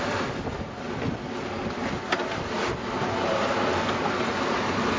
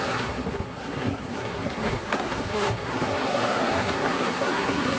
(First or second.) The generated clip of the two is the second